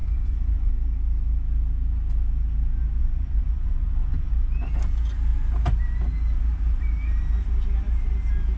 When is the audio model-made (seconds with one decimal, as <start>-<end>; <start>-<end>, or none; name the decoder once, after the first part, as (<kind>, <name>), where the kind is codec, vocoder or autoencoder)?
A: 0.0-0.7 (vocoder, Vocos); 3.0-4.3